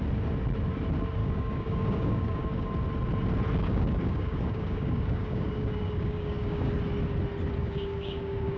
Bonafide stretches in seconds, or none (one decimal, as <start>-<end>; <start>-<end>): 0.0-1.2; 2.7-3.6; 6.7-7.6